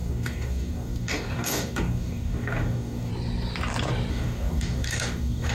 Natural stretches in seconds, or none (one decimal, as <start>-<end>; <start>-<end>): 3.1-4.1